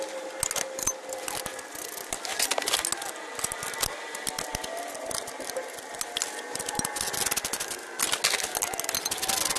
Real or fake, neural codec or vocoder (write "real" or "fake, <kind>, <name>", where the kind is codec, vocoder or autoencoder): real